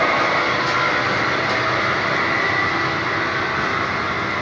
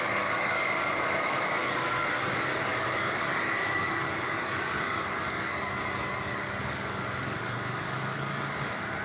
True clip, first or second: first